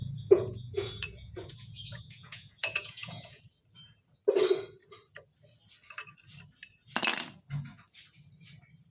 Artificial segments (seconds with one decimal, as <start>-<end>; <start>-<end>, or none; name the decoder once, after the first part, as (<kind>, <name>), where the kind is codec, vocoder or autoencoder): 0.0-3.4 (vocoder, Vocos)